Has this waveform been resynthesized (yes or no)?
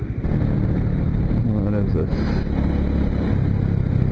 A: no